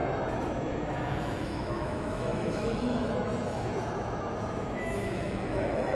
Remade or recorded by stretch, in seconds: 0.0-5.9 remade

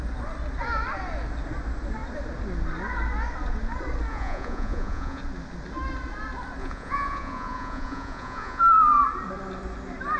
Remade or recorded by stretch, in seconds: 0.0-4.1 recorded; 4.1-5.2 remade; 5.2-6.6 recorded; 6.6-8.6 remade; 8.6-10.2 recorded

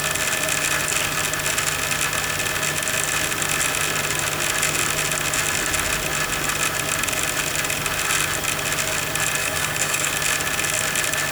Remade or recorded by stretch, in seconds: 0.0-9.4 recorded; 9.4-10.1 remade; 10.1-11.3 recorded

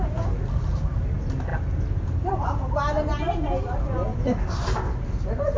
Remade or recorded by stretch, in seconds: 0.0-5.6 recorded

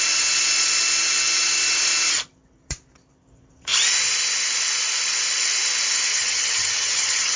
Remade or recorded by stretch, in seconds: 0.0-6.1 recorded; 6.1-7.4 remade